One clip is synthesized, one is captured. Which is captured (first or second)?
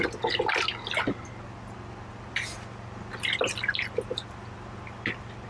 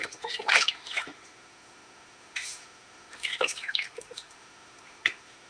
first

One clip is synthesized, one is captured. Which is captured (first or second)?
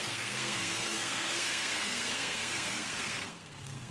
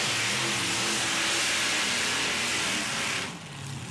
second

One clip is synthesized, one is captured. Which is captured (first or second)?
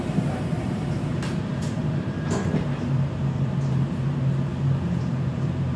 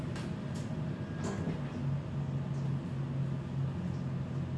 second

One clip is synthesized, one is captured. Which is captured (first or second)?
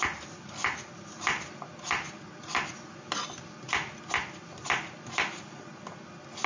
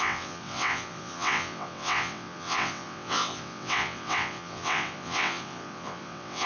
first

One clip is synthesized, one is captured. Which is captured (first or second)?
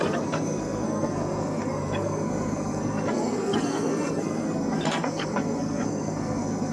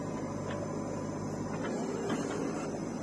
second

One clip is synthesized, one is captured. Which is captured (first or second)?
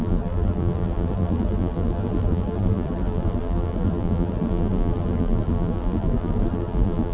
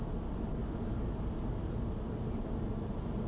second